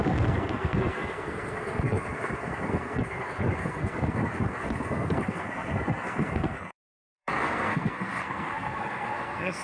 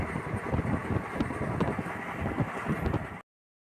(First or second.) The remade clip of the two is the first